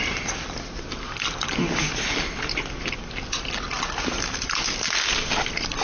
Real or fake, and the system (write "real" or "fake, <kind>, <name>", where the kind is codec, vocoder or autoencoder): real